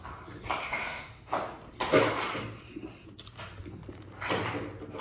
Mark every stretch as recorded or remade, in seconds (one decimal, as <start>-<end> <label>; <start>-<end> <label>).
0.0-0.6 recorded; 0.6-1.3 remade; 1.3-5.0 recorded

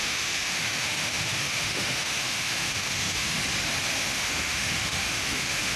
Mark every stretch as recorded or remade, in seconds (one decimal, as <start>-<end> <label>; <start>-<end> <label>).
0.0-3.4 remade; 3.4-3.9 recorded; 3.9-5.8 remade

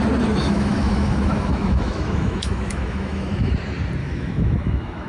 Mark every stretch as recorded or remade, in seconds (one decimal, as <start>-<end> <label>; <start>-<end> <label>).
0.0-0.4 recorded; 0.4-3.5 remade; 3.5-4.0 recorded; 4.0-5.1 remade